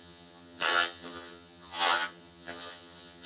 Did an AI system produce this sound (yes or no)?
yes